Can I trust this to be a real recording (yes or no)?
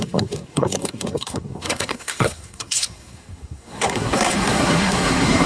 no